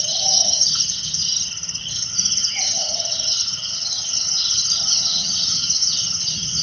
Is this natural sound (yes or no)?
no